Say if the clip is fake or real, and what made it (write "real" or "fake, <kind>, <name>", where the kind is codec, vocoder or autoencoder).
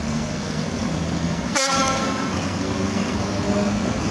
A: fake, codec, SNAC